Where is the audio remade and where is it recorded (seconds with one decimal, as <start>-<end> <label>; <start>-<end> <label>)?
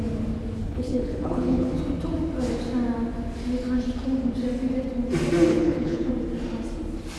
0.0-0.6 recorded; 0.6-1.7 remade; 1.7-5.5 recorded; 5.5-6.1 remade; 6.1-7.2 recorded